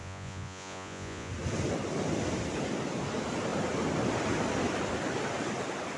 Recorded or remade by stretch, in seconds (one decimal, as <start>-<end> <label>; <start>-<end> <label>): 0.0-1.3 remade; 1.3-6.0 recorded